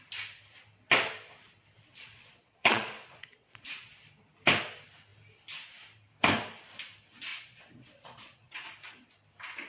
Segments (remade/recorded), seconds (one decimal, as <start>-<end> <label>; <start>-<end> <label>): 0.0-1.9 recorded; 1.9-3.9 remade; 3.9-7.3 recorded; 7.3-8.7 remade; 8.7-9.7 recorded